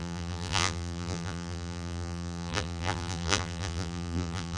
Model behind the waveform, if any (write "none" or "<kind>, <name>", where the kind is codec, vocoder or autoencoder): vocoder, BigVGAN v2